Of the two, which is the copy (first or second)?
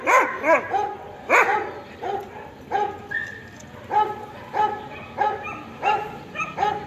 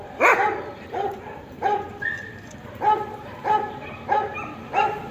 second